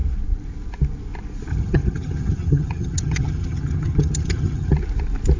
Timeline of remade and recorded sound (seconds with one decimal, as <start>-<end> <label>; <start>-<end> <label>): 0.0-1.5 recorded; 1.5-4.7 remade; 4.7-5.4 recorded